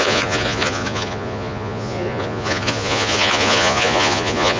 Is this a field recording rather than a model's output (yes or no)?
no